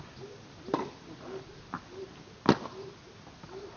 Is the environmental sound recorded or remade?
recorded